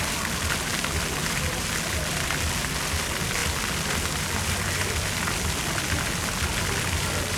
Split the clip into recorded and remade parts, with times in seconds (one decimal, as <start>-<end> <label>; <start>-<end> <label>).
0.0-7.4 recorded